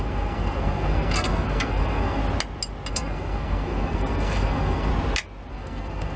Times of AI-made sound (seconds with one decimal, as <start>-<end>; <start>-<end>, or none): 0.0-2.2; 2.9-4.9; 5.5-6.2